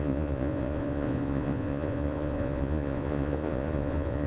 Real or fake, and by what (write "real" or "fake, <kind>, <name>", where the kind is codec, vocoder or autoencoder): fake, vocoder, Vocos